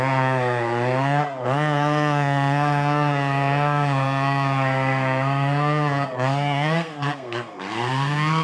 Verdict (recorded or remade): remade